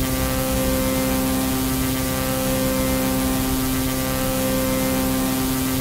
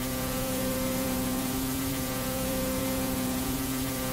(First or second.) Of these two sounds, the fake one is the second